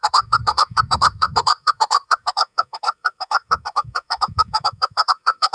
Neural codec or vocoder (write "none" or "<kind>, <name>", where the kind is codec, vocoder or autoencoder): codec, SNAC